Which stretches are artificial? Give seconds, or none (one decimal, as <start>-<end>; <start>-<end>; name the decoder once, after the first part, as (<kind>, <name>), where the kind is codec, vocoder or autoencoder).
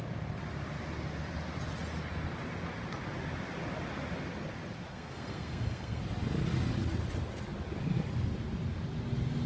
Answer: 4.9-6.0 (codec, SNAC)